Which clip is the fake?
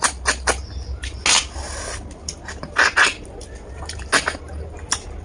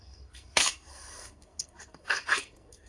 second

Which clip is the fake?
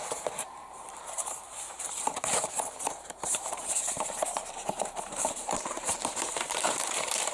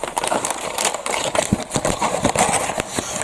first